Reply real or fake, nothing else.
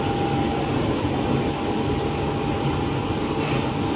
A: real